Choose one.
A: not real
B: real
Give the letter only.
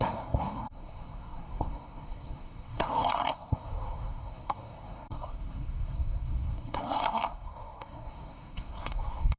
A